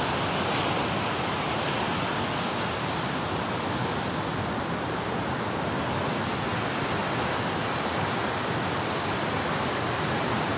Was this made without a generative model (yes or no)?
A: yes